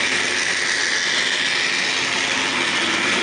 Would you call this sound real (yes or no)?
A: yes